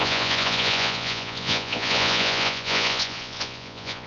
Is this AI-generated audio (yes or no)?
yes